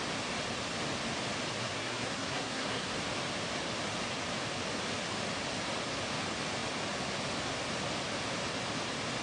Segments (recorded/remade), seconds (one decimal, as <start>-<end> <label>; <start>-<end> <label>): 0.0-1.6 recorded; 1.6-2.9 remade; 2.9-9.2 recorded